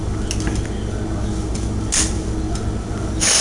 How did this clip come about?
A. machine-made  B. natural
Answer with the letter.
B